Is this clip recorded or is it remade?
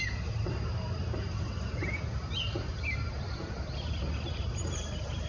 remade